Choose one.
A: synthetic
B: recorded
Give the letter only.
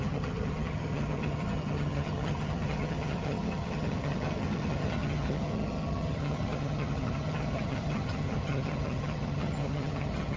A